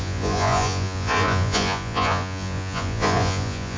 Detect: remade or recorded remade